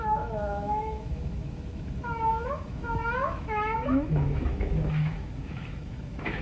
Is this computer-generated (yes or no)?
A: yes